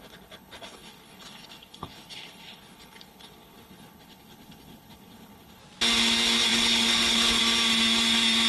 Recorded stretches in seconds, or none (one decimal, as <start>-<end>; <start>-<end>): 5.6-6.5; 7.4-8.5